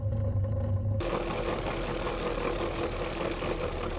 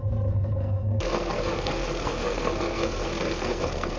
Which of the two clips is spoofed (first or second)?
second